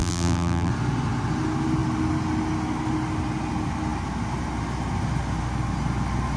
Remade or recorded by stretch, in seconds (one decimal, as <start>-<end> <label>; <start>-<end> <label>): 0.0-0.7 remade; 0.7-6.4 recorded